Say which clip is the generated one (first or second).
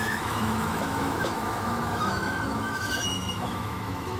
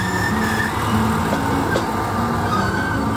first